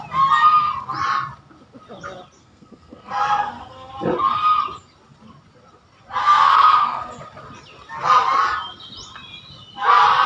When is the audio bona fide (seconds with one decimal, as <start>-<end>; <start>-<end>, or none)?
0.0-2.4; 3.9-6.2; 7.1-10.3